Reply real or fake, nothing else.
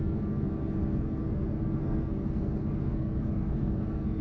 fake